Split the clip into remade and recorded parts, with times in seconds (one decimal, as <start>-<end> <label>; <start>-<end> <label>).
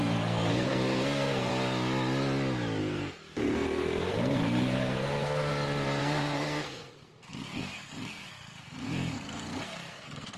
0.0-1.5 remade; 1.5-2.8 recorded; 2.8-5.5 remade; 5.5-6.0 recorded; 6.0-10.4 remade